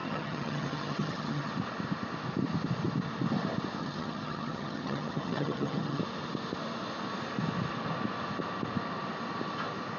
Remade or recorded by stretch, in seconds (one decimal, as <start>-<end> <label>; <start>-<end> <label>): 0.0-1.5 remade; 1.5-3.8 recorded; 3.8-6.0 remade; 6.0-10.0 recorded